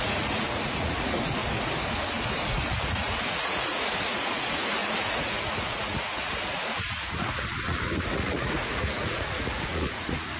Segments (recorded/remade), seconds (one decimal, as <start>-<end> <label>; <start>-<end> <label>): 0.0-1.4 remade; 1.4-2.4 recorded; 2.4-10.4 remade